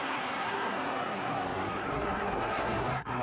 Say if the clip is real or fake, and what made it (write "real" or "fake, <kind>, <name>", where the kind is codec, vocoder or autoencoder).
fake, codec, SNAC